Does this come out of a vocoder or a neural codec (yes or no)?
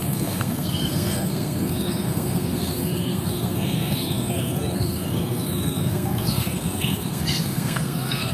yes